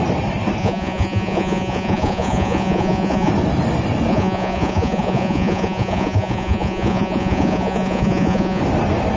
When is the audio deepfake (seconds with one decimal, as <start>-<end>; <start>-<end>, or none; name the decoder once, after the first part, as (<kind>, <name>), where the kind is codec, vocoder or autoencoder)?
0.6-3.3 (vocoder, Vocos); 4.1-8.6